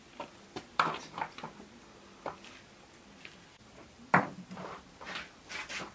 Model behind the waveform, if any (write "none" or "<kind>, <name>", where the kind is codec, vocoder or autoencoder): none